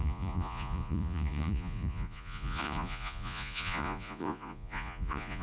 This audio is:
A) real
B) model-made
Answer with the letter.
B